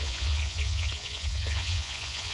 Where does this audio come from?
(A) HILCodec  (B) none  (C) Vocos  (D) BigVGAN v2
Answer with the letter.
C